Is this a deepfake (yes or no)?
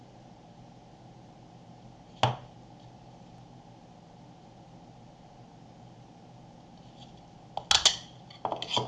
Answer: no